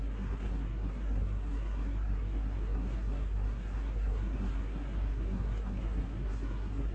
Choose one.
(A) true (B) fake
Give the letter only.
B